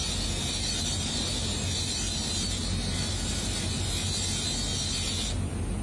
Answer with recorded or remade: recorded